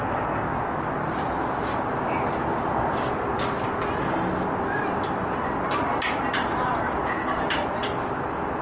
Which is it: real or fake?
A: real